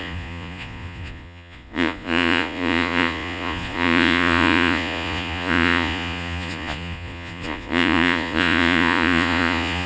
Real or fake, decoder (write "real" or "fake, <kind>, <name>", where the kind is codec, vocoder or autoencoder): fake, vocoder, Vocos